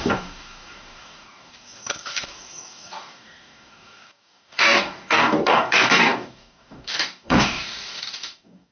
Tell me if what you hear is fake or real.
fake